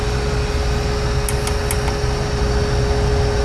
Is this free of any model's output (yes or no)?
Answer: yes